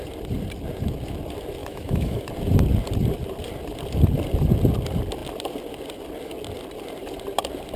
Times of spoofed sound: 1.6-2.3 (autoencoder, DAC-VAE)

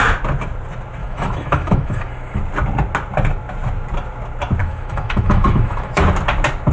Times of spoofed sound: 1.0-2.4 (autoencoder, DAC-VAE); 4.6-6.0

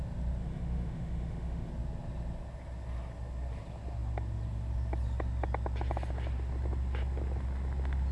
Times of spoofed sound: 0.4-1.7 (autoencoder, DAC-VAE)

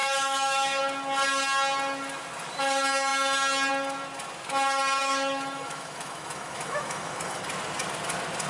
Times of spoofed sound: 0.0-0.8 (autoencoder, DAC-VAE); 5.0-7.4